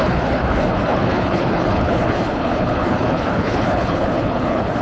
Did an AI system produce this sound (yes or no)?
yes